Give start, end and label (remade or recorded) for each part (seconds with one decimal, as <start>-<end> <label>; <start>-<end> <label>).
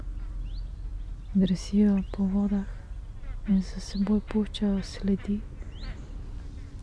0.0-6.8 recorded